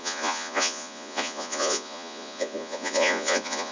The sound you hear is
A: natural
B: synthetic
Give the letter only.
B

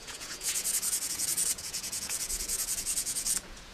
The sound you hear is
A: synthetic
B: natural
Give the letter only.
A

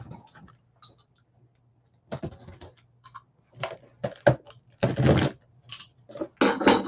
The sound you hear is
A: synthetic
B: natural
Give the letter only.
B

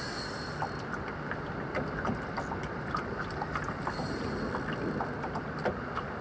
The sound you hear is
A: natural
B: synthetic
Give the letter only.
A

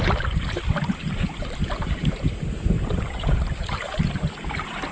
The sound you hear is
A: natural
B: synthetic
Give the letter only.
A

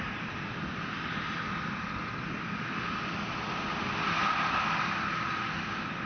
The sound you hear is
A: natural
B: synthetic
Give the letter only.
A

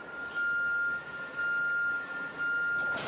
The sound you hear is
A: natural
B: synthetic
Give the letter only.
A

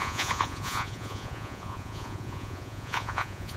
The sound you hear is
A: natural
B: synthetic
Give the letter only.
B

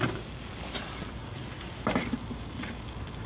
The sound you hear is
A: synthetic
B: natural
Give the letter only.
B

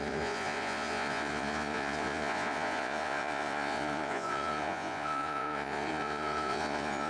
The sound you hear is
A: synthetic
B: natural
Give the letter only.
A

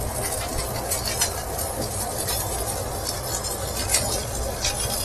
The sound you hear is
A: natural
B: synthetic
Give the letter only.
A